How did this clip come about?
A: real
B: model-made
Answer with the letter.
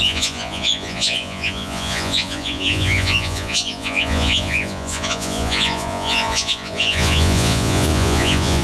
B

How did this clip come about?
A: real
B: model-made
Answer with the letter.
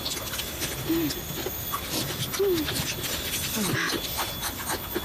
A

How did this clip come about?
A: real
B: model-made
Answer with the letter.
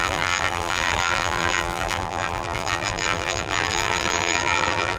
B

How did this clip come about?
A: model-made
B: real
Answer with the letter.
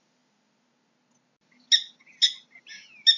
B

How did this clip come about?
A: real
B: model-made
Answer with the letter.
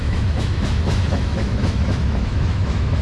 B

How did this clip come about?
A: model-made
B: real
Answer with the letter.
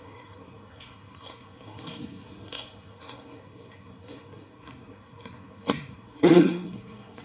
A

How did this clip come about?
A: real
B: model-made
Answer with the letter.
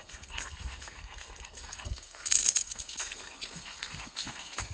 B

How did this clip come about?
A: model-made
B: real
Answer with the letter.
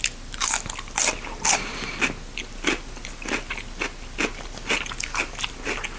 B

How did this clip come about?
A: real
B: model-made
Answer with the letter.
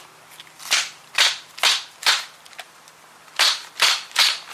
A